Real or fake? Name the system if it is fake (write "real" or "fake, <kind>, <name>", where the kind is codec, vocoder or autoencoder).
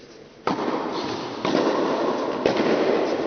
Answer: real